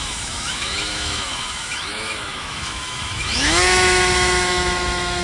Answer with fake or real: fake